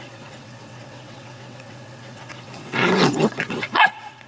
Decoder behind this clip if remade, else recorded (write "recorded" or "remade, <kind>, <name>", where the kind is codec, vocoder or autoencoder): remade, vocoder, WaveNeXt